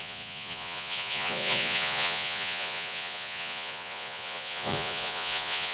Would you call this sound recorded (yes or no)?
no